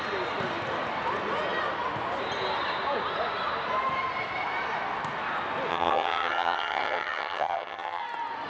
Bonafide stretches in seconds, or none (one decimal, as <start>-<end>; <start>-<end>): 0.0-5.7; 8.0-8.5